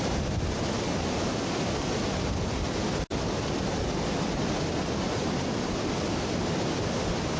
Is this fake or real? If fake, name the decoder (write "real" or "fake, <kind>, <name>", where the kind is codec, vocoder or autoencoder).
real